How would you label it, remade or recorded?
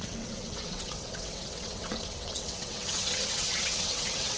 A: remade